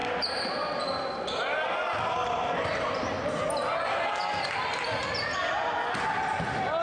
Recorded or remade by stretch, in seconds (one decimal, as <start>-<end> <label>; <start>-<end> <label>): 0.0-6.8 recorded

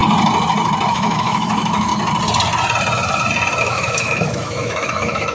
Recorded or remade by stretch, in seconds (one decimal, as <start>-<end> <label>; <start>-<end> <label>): 0.0-0.9 recorded; 0.9-1.9 remade; 1.9-3.6 recorded; 3.6-5.3 remade

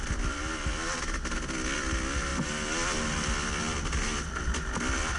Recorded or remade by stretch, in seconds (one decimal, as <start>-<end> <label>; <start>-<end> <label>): 0.0-5.2 recorded

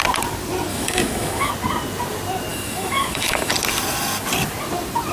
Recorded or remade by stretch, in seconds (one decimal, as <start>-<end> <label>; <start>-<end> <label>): 0.0-0.7 recorded; 0.7-1.5 remade; 1.5-2.5 recorded; 2.5-3.5 remade; 3.5-5.1 recorded

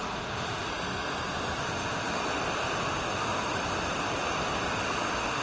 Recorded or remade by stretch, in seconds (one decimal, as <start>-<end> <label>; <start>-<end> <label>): 0.0-0.7 remade; 0.7-1.6 recorded; 1.6-2.2 remade; 2.2-3.2 recorded; 3.2-3.6 remade; 3.6-4.7 recorded; 4.7-5.4 remade

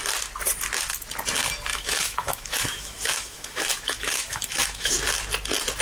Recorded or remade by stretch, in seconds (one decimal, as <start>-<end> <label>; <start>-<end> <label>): 0.0-1.7 recorded; 1.7-4.9 remade; 4.9-5.8 recorded